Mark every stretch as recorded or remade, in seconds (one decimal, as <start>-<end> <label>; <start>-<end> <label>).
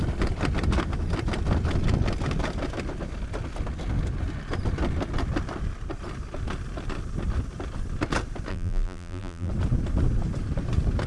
0.0-8.5 recorded; 8.5-9.5 remade; 9.5-11.1 recorded